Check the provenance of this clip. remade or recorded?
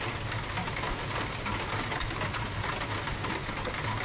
recorded